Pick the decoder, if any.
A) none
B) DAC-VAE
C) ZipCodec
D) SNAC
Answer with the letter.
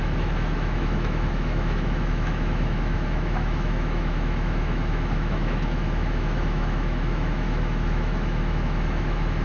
B